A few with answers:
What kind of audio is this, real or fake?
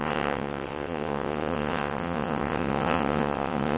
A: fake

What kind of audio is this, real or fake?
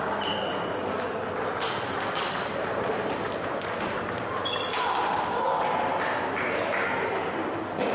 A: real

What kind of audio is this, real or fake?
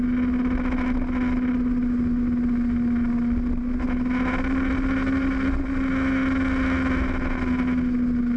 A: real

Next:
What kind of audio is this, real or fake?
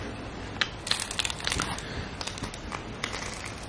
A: real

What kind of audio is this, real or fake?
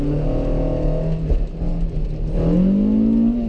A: real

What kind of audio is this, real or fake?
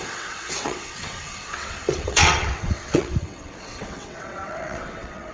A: fake